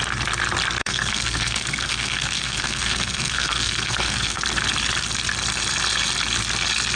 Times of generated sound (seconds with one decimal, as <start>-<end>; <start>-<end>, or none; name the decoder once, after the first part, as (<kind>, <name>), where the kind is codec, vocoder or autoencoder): 0.8-4.4 (codec, SNAC)